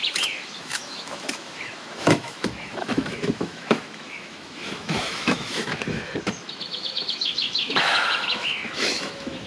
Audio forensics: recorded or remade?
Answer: remade